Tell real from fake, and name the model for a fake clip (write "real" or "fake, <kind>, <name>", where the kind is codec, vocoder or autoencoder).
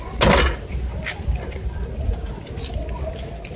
real